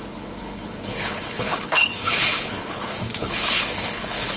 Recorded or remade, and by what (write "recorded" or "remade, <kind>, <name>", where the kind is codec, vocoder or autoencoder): remade, codec, HILCodec